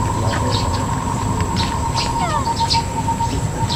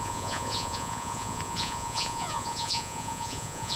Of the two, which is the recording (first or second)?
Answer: first